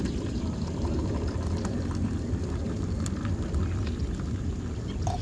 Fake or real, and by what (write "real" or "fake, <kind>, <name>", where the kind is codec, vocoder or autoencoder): real